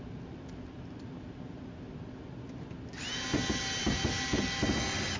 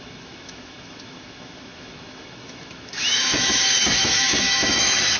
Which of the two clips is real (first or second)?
first